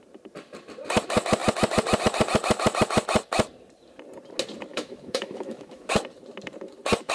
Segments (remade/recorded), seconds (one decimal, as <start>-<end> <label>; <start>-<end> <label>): 0.0-4.7 recorded; 4.7-5.9 remade; 5.9-7.1 recorded